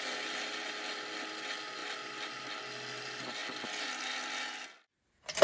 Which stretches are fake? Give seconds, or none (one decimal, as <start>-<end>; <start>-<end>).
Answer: none